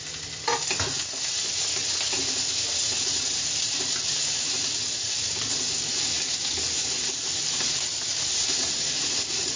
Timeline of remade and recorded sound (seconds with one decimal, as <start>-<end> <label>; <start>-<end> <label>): 0.0-9.6 recorded